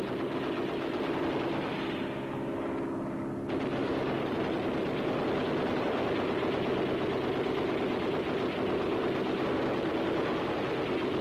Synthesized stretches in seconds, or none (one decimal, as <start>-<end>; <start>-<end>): 3.8-4.3